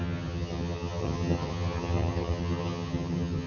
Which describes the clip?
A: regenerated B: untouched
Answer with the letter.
A